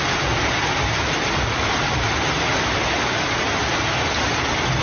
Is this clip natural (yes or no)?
yes